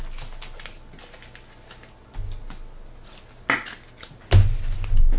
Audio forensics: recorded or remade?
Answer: recorded